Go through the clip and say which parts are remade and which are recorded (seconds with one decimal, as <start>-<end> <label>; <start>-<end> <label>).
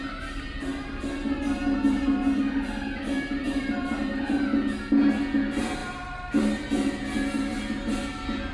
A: 0.0-8.5 recorded